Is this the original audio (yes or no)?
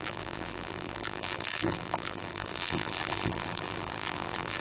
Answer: no